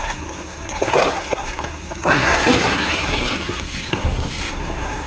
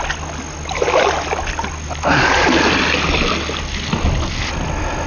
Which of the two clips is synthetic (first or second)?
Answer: first